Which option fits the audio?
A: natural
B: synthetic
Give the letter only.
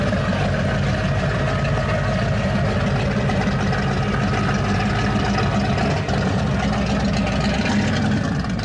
A